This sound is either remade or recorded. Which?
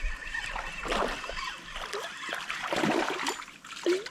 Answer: recorded